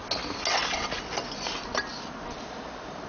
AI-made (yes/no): no